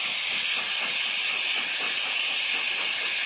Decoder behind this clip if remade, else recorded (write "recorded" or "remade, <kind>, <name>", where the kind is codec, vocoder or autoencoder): recorded